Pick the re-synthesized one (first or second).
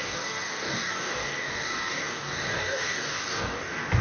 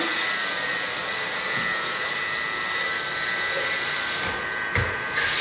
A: first